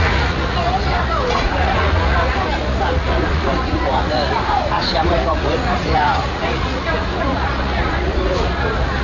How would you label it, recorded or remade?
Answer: remade